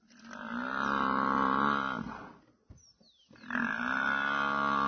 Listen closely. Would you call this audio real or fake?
real